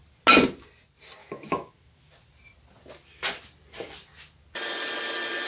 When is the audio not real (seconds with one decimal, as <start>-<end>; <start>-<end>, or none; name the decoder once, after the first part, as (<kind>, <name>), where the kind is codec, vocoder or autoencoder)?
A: 1.2-2.1 (autoencoder, DAC-VAE)